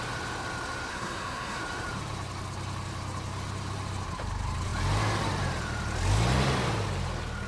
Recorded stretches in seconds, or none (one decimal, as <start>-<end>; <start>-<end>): 0.0-0.9; 1.6-7.5